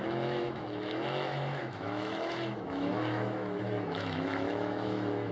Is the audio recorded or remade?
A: remade